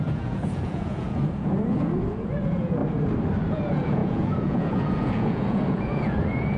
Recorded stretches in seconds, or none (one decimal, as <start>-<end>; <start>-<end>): 2.8-3.5